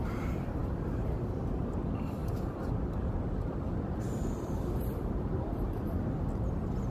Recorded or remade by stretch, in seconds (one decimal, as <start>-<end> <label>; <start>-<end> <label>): 0.0-6.9 recorded